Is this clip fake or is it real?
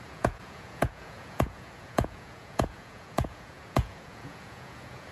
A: fake